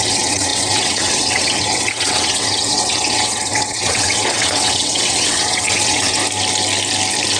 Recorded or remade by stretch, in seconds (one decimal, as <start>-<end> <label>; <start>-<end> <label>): 0.0-6.2 remade; 6.2-7.4 recorded